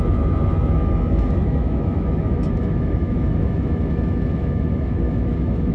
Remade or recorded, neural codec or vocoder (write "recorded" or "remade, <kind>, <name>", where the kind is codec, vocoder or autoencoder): remade, autoencoder, DAC-VAE